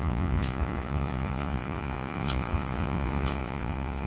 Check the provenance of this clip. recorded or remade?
remade